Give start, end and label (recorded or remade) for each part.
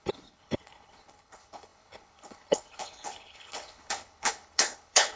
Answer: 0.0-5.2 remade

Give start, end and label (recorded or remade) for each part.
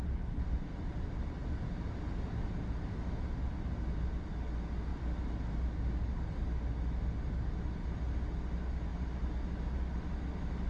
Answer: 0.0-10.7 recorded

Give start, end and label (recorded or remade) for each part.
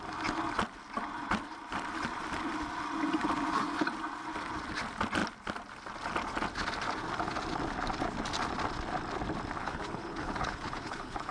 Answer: 0.0-9.6 recorded; 9.6-11.3 remade